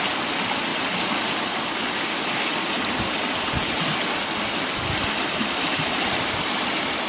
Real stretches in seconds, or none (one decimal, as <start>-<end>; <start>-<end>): 0.0-7.1